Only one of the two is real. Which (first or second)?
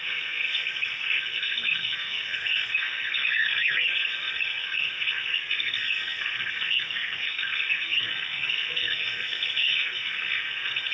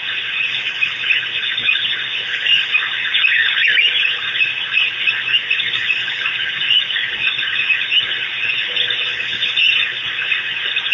second